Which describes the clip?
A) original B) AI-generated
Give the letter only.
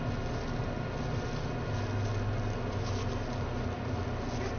A